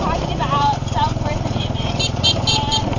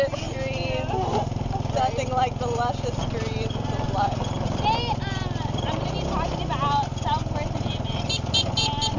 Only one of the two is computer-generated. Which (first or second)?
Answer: first